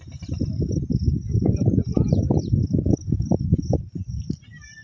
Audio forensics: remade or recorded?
recorded